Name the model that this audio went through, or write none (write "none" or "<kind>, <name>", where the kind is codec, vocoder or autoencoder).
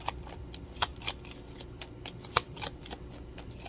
none